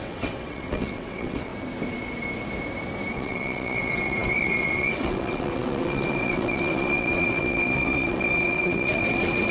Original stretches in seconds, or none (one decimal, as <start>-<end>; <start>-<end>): 1.5-3.1